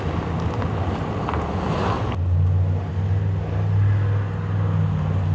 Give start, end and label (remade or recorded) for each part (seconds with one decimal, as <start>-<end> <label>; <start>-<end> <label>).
0.0-5.3 recorded